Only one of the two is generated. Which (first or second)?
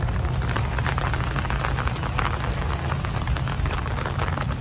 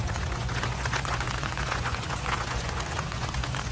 second